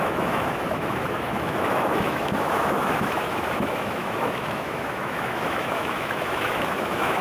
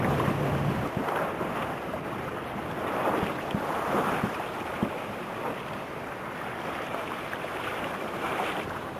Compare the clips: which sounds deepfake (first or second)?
first